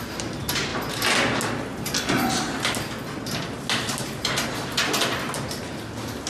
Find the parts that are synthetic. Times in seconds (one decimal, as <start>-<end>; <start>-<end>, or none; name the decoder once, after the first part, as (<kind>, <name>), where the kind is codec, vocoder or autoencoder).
none